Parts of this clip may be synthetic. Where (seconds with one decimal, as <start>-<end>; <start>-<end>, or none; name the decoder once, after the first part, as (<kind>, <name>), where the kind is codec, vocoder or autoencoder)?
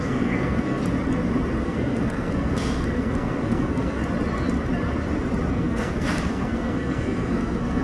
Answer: 0.0-0.8 (codec, SNAC); 1.6-4.0; 5.5-7.8